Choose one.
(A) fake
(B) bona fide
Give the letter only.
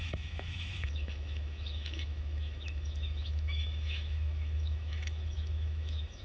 A